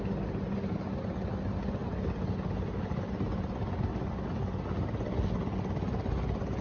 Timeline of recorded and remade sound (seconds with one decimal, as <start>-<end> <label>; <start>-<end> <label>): 0.0-6.6 recorded